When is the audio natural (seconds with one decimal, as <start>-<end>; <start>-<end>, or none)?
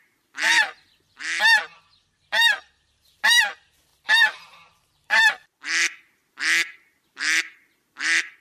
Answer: none